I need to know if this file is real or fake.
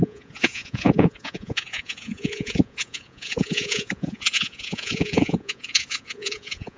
fake